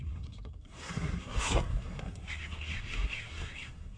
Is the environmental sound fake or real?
fake